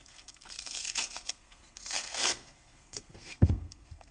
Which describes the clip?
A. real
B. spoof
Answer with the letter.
B